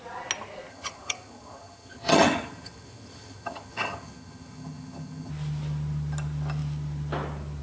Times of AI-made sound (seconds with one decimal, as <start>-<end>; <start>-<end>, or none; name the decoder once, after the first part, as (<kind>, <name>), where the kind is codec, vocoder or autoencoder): 0.7-5.3 (vocoder, HiFi-GAN)